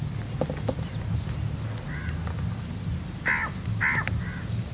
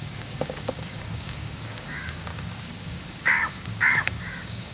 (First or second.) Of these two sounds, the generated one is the second